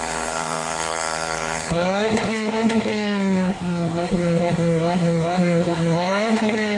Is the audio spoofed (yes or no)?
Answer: yes